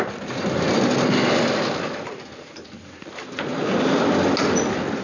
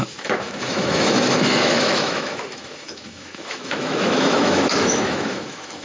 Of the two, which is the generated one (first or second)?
second